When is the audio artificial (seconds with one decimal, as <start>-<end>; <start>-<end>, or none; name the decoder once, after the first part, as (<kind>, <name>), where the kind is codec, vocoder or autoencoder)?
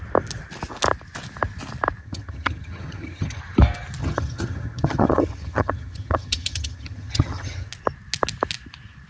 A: 2.0-3.4 (vocoder, HiFi-GAN); 4.0-7.7